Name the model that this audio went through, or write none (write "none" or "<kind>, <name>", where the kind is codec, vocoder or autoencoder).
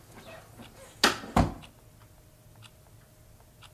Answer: none